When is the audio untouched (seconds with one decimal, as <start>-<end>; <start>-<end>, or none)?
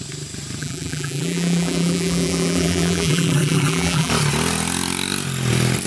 0.0-0.6; 4.1-5.9